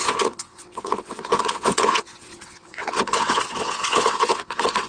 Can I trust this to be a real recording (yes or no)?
no